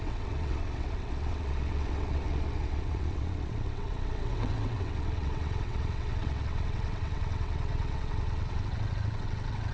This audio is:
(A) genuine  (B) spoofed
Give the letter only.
B